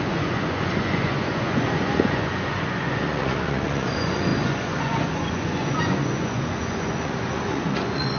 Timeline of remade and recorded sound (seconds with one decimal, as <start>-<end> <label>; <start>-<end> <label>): 0.0-8.2 remade